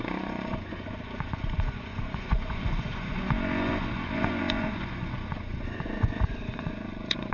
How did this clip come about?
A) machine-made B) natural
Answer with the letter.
A